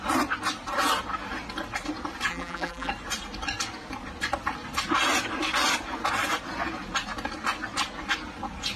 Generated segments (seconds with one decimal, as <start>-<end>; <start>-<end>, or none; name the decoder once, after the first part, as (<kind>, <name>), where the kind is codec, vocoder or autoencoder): 2.3-2.9 (vocoder, BigVGAN v2)